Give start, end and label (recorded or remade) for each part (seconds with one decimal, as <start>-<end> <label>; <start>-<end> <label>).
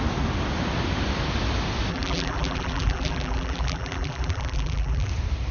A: 0.0-1.9 recorded; 1.9-5.1 remade; 5.1-5.5 recorded